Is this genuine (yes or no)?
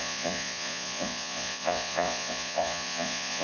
no